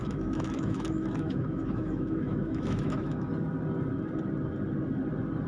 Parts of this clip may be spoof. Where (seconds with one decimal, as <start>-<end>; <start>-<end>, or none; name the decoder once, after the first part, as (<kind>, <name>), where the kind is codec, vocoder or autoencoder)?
0.0-3.3 (autoencoder, DAC-VAE)